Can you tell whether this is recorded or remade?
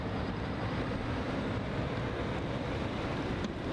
remade